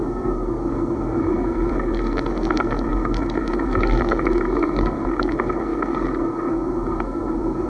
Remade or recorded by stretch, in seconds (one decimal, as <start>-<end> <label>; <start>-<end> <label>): 0.0-7.7 remade